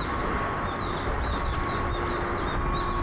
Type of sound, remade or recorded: recorded